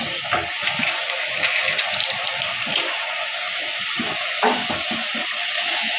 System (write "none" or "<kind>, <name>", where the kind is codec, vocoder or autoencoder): none